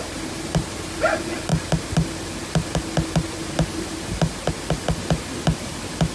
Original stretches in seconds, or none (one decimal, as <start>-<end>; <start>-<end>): 0.0-6.1